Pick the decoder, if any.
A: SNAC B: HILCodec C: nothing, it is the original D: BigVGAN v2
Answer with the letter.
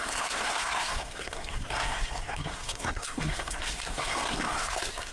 A